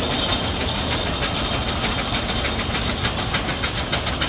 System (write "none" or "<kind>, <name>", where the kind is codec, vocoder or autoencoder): none